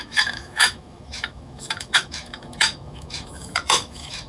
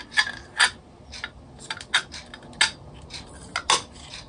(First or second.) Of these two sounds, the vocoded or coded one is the first